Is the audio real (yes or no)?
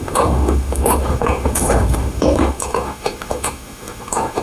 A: no